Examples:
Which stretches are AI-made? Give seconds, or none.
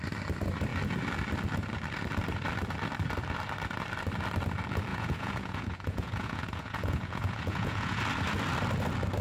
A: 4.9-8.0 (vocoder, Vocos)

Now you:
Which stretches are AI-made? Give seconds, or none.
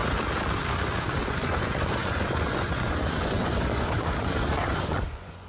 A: 1.0-5.5 (vocoder, Vocos)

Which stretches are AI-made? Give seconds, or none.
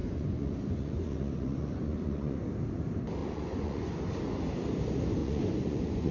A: 0.0-2.4 (vocoder, Vocos); 3.2-3.9; 5.2-6.1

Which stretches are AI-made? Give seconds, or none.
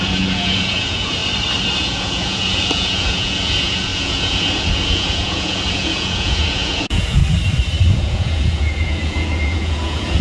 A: 0.0-1.2 (vocoder, Vocos); 1.8-7.2; 7.9-10.2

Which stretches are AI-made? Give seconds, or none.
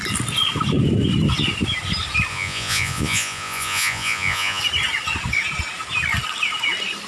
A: 2.3-4.6 (vocoder, Vocos)